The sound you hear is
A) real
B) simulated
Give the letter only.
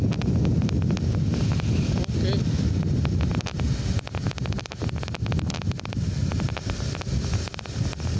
A